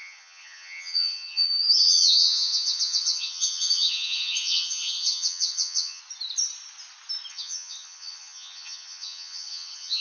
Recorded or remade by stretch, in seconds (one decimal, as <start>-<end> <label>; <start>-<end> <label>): 0.0-6.0 remade; 6.0-7.3 recorded; 7.3-10.0 remade